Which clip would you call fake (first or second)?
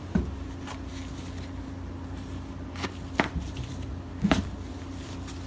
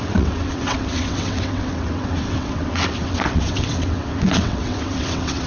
second